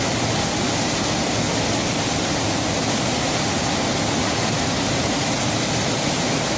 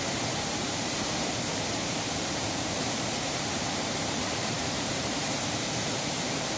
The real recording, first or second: first